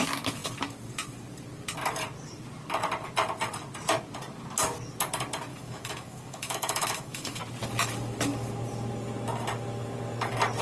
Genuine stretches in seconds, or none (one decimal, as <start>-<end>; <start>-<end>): 0.0-5.5; 7.4-10.6